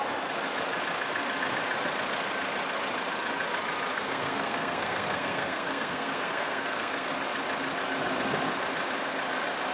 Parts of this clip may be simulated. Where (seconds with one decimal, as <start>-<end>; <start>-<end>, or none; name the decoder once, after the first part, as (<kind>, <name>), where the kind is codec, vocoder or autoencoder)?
3.9-7.1 (codec, SNAC)